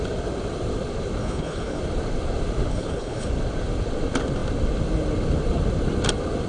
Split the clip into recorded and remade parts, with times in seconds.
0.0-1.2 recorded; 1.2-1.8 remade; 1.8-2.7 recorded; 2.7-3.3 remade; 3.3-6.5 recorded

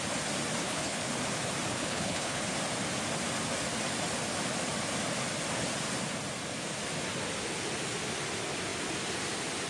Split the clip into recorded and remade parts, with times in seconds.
0.0-0.6 recorded; 0.6-1.1 remade; 1.1-1.7 recorded; 1.7-2.4 remade; 2.4-9.7 recorded

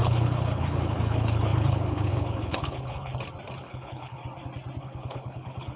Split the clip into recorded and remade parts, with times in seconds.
0.0-3.1 remade; 3.1-3.6 recorded; 3.6-4.2 remade; 4.2-4.8 recorded; 4.8-5.8 remade

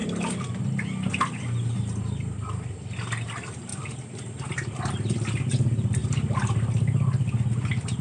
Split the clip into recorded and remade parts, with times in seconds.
0.0-8.0 recorded

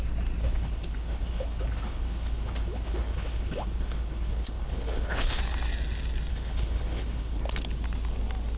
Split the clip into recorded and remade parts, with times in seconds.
0.0-0.4 recorded; 0.4-5.4 remade; 5.4-6.3 recorded; 6.3-7.4 remade; 7.4-8.6 recorded